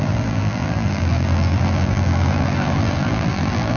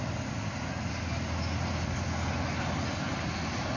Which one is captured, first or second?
second